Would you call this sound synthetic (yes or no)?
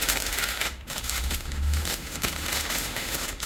yes